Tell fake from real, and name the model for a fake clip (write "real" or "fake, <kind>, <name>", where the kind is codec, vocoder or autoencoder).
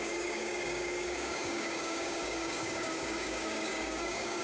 fake, codec, DAC